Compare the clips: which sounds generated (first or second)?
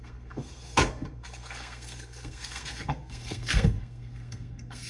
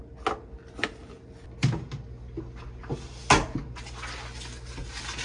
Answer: first